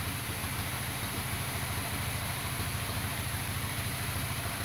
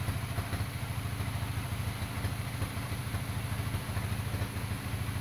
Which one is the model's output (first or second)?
first